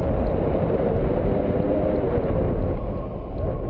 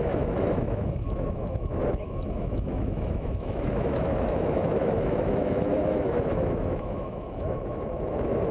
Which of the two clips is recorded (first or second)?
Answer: first